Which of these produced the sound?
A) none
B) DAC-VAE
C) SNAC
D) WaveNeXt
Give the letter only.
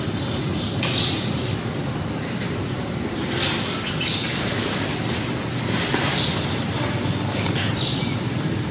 A